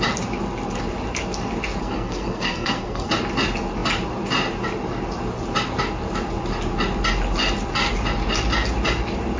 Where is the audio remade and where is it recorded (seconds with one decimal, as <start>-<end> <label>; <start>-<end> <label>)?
0.0-1.8 recorded; 1.8-3.1 remade; 3.1-9.4 recorded